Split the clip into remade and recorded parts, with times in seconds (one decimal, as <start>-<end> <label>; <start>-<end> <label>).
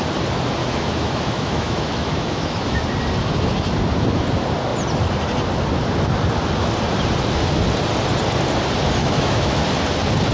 0.0-0.6 recorded; 0.6-2.8 remade; 2.8-9.0 recorded; 9.0-9.6 remade; 9.6-10.3 recorded